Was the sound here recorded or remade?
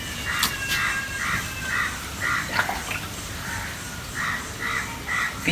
recorded